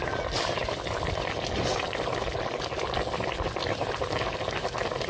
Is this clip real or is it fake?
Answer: real